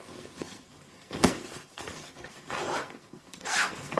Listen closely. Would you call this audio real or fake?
fake